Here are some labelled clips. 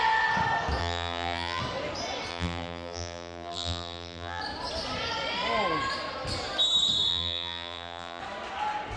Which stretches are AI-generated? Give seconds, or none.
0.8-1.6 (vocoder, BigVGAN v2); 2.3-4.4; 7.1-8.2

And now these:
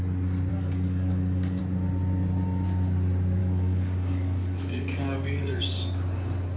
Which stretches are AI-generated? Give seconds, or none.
0.5-1.6 (codec, DAC); 3.4-5.6

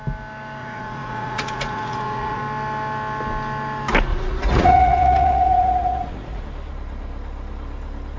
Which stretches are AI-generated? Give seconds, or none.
0.6-2.4 (vocoder, Vocos); 4.1-6.4

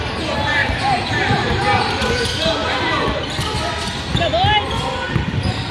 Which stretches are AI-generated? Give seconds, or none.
0.6-2.4 (vocoder, BigVGAN v2)